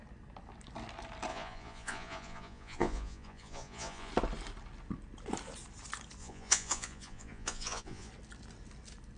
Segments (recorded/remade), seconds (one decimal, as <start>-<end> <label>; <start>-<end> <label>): 0.0-1.3 recorded; 1.3-4.1 remade; 4.1-6.2 recorded; 6.2-8.1 remade; 8.1-9.2 recorded

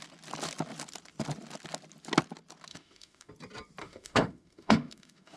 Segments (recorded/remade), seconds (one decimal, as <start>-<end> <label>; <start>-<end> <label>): 0.0-2.7 recorded; 2.7-3.3 remade; 3.3-3.8 recorded; 3.8-5.4 remade